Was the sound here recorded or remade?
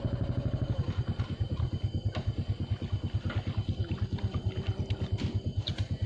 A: recorded